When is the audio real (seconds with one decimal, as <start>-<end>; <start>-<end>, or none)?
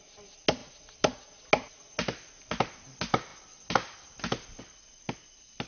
0.0-5.7